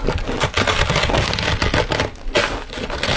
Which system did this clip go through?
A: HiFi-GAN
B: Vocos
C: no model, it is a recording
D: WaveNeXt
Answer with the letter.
C